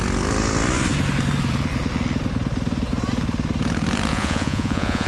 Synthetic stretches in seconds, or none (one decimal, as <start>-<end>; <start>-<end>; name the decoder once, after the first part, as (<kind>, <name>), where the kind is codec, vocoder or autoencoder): 4.1-5.1 (vocoder, Vocos)